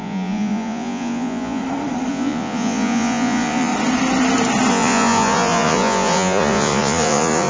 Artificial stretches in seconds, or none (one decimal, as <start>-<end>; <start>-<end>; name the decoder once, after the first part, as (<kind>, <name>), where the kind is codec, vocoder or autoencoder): 0.0-1.6 (vocoder, Vocos); 2.1-3.7; 4.7-7.5